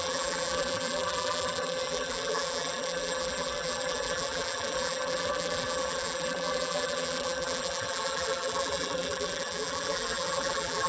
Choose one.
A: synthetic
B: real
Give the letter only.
A